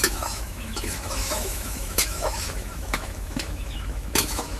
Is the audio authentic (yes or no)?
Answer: no